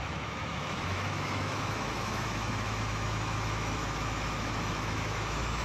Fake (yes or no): yes